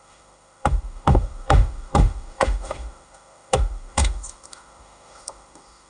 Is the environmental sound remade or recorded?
remade